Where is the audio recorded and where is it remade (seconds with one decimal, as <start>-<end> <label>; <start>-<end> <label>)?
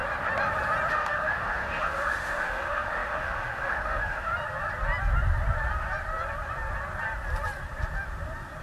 0.0-0.9 recorded; 0.9-4.3 remade; 4.3-8.6 recorded